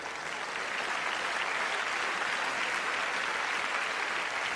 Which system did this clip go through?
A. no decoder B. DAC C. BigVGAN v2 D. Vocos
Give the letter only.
A